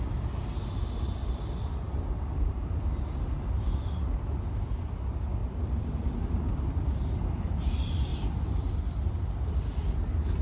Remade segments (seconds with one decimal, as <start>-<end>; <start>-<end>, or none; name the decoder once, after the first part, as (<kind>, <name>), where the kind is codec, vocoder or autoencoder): 5.4-6.5 (vocoder, BigVGAN v2)